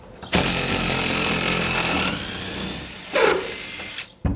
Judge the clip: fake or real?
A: real